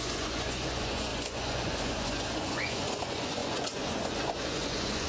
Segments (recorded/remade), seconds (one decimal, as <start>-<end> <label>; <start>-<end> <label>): 0.0-5.1 remade